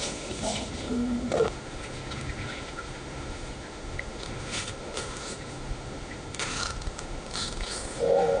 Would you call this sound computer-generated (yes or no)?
yes